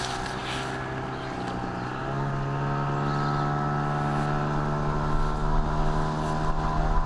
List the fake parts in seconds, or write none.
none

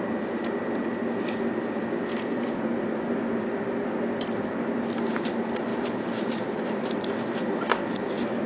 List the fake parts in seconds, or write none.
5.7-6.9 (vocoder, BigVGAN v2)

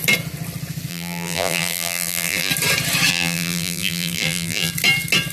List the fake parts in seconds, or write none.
0.9-2.5 (vocoder, BigVGAN v2); 3.1-4.7

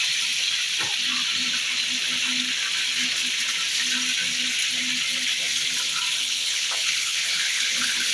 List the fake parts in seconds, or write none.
6.2-8.1 (codec, HILCodec)

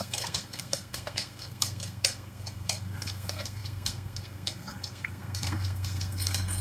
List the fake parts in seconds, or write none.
0.0-6.6 (codec, SNAC)

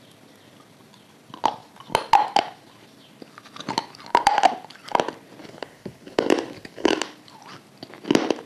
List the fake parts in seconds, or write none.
5.4-7.0 (codec, DAC)

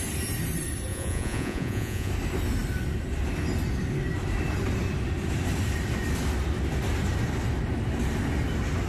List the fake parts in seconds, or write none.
0.9-2.1 (vocoder, Vocos)